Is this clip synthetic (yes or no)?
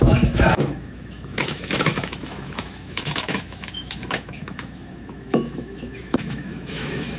yes